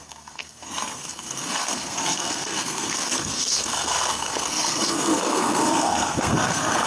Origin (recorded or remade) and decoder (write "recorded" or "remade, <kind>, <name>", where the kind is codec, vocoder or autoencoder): remade, codec, SNAC